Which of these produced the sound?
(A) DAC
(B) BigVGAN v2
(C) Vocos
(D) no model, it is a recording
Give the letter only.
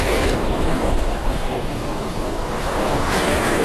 A